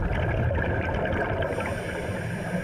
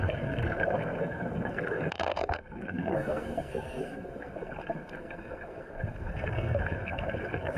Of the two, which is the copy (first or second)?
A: second